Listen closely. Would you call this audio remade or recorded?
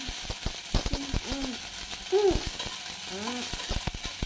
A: recorded